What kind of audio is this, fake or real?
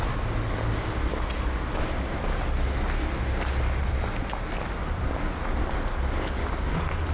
real